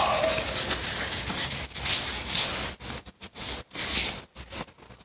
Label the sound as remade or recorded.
recorded